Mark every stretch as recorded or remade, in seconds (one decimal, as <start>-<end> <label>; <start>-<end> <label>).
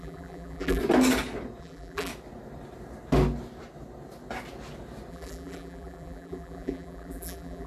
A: 0.0-0.8 remade; 0.8-1.6 recorded; 1.6-2.1 remade; 2.1-5.1 recorded; 5.1-7.7 remade